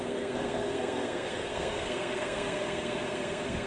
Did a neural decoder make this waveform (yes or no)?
yes